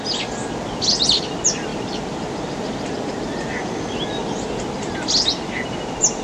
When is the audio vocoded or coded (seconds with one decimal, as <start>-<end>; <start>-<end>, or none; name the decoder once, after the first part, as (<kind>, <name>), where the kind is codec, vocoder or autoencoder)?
none